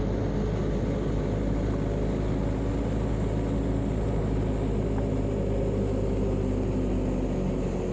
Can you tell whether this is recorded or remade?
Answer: recorded